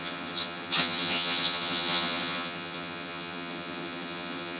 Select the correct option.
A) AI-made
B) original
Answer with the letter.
A